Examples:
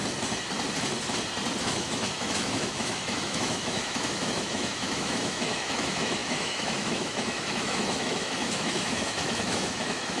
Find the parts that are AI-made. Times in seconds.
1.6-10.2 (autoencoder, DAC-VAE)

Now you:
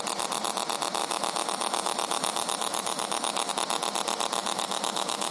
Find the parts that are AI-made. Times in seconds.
1.0-3.5 (autoencoder, DAC-VAE); 4.4-5.3

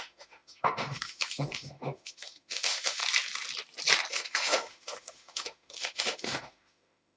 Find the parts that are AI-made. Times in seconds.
0.0-3.0 (autoencoder, DAC-VAE); 4.1-7.2

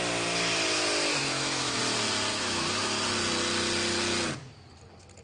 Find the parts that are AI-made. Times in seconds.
1.2-1.8 (autoencoder, DAC-VAE); 2.3-3.0

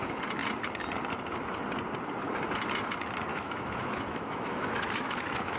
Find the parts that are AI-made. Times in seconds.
3.3-5.6 (autoencoder, DAC-VAE)